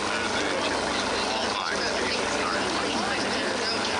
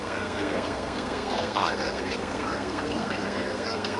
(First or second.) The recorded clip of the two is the first